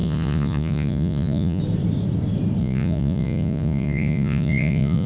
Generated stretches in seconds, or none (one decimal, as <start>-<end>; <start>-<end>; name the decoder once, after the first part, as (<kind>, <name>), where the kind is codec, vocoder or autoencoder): 0.0-1.6 (vocoder, Vocos); 2.6-5.1